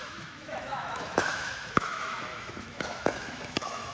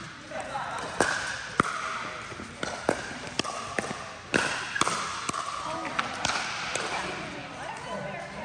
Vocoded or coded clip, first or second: first